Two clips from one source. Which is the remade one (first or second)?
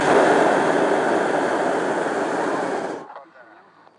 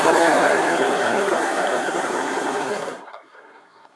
second